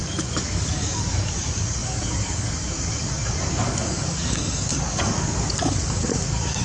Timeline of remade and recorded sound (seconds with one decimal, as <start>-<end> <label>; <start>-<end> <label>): 0.0-6.6 remade